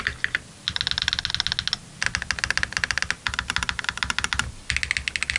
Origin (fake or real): real